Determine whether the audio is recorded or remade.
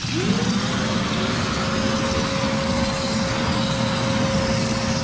recorded